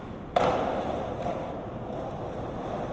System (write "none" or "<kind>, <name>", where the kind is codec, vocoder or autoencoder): none